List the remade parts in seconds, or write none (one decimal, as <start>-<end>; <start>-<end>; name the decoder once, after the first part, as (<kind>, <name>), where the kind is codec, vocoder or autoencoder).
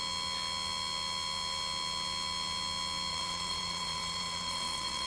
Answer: 3.1-5.1 (vocoder, Vocos)